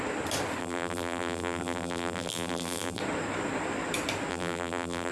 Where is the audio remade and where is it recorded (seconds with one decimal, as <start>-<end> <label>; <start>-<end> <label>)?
0.0-0.6 recorded; 0.6-3.0 remade; 3.0-4.3 recorded; 4.3-5.1 remade